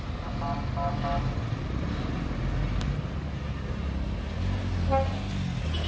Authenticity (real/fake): real